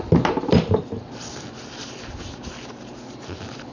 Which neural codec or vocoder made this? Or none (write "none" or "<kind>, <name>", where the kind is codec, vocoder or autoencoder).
none